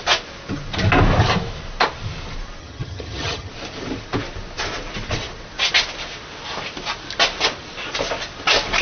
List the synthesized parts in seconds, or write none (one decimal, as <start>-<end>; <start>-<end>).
2.6-3.5

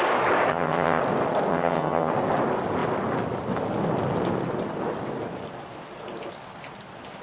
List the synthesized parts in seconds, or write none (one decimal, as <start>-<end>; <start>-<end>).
0.5-1.0; 1.5-2.1